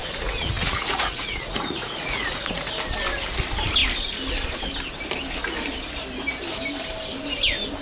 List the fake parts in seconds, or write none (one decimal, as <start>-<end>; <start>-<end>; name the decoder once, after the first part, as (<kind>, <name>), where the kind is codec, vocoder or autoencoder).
0.0-2.7 (vocoder, Vocos)